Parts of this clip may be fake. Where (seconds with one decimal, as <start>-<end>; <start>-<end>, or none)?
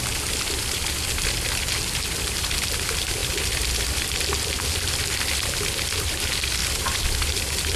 6.6-7.8